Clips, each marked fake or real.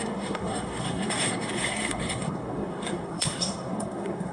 fake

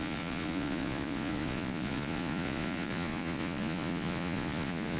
fake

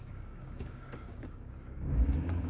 fake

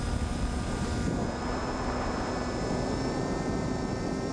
fake